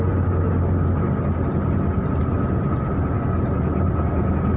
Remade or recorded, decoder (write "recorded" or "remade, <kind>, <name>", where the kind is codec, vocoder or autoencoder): recorded